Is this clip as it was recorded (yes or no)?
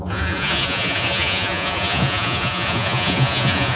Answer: no